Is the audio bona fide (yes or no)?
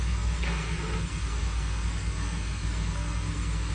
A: no